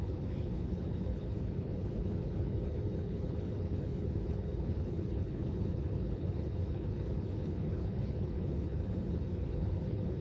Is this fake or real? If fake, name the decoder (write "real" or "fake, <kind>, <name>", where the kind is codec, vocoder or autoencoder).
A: fake, codec, HILCodec